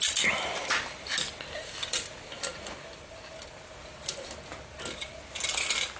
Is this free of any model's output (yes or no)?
yes